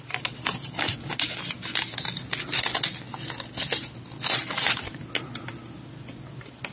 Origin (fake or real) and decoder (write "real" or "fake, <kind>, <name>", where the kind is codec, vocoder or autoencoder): real